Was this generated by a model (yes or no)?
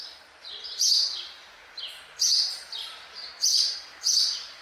yes